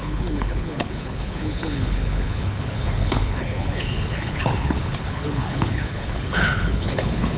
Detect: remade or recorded remade